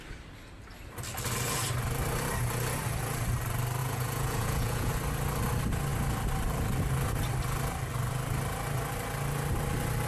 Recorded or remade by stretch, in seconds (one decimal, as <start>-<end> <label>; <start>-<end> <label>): 0.0-3.8 recorded; 3.8-4.9 remade; 4.9-10.1 recorded